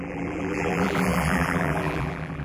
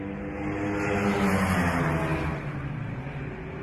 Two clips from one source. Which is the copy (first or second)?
first